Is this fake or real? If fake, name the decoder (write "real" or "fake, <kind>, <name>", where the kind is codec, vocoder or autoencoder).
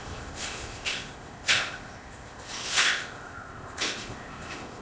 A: fake, codec, ZipCodec